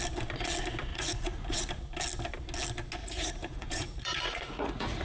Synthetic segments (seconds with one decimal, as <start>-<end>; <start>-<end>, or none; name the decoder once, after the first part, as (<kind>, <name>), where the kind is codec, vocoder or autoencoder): 0.9-1.7 (vocoder, Vocos); 3.0-5.0